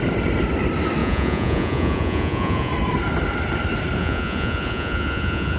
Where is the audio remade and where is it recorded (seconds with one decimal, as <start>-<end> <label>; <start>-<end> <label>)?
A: 0.0-1.0 recorded; 1.0-2.7 remade; 2.7-4.0 recorded; 4.0-5.6 remade